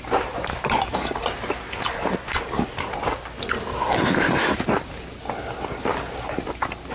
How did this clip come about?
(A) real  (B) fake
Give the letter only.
A